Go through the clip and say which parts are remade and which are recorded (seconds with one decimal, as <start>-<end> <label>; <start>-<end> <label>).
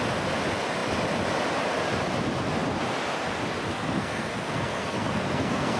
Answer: 0.0-3.7 recorded; 3.7-5.8 remade